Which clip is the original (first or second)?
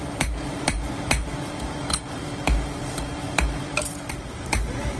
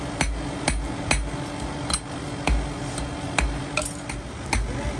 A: second